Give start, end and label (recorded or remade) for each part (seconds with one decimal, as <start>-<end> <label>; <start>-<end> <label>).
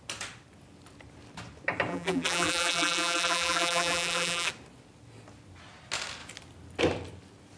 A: 0.0-1.9 recorded; 1.9-4.5 remade; 4.5-7.6 recorded